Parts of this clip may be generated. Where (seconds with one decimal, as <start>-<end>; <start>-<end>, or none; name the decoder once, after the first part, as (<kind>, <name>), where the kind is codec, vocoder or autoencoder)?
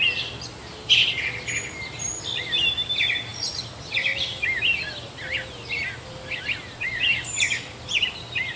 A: none